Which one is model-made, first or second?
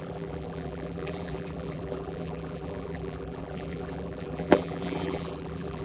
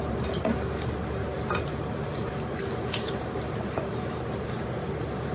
first